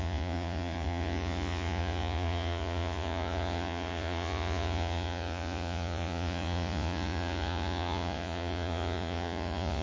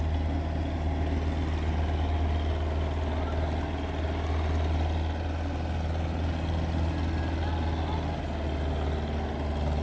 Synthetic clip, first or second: first